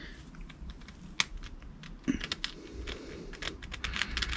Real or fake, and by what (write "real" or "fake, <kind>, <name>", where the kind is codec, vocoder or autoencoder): real